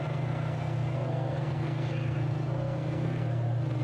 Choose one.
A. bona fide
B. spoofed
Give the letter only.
B